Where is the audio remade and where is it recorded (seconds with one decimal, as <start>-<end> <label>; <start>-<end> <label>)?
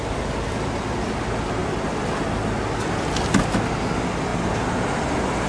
0.0-5.5 recorded